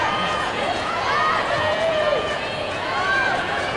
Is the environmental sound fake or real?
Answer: fake